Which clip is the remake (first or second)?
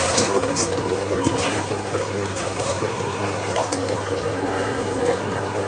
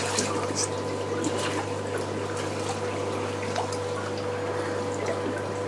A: first